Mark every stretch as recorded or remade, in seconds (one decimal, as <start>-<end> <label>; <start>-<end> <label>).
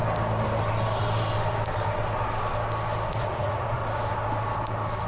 0.0-3.1 recorded; 3.1-3.8 remade; 3.8-5.1 recorded